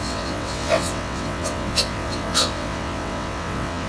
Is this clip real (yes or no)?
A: no